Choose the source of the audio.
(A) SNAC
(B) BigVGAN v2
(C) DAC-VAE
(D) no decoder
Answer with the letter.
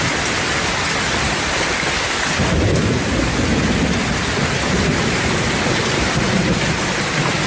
D